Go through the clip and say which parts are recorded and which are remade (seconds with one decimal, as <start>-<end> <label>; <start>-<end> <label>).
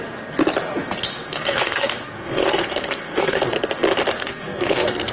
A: 0.0-1.1 recorded; 1.1-3.4 remade; 3.4-4.2 recorded; 4.2-5.1 remade